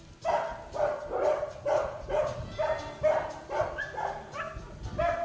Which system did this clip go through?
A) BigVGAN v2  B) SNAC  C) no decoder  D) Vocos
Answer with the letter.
C